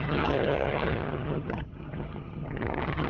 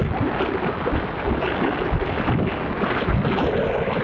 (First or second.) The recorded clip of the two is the second